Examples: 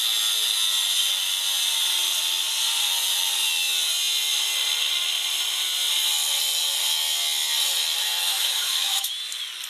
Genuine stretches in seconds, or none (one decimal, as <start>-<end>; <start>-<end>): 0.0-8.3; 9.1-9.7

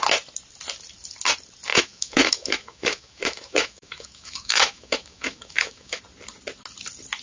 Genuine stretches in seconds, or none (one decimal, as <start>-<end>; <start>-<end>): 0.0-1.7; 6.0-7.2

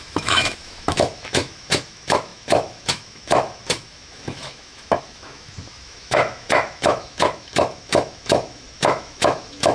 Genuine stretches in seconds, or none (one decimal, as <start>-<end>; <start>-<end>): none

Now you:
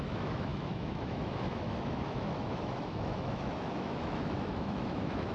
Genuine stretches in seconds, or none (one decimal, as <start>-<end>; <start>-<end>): none

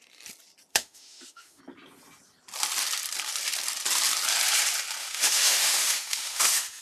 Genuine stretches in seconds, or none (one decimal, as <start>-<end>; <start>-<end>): 0.0-0.7; 1.6-5.0

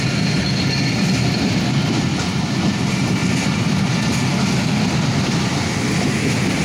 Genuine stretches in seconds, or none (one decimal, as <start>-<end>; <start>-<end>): 0.0-6.6

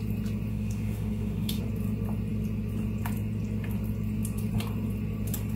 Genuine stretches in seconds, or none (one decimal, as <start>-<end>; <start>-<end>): 0.0-0.5; 1.6-5.6

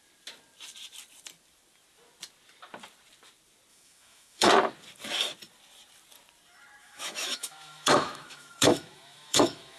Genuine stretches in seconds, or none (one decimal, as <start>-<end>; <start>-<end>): 0.0-3.7; 4.5-6.8